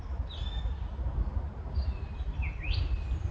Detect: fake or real real